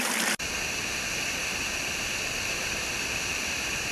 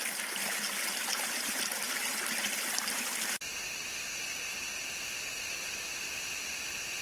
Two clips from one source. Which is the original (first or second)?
second